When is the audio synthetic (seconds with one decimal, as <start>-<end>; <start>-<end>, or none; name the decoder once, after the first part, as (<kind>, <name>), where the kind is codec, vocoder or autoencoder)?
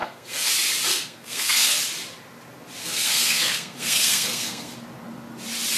0.0-0.5 (codec, SNAC); 0.9-1.8; 2.8-4.7